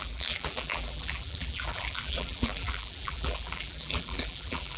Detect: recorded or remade remade